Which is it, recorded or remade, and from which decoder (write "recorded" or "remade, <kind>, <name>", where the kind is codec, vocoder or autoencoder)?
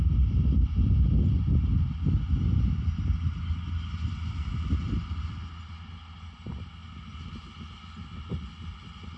recorded